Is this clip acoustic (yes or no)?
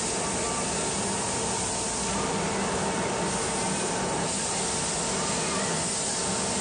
yes